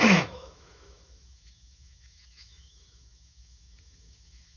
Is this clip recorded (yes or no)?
no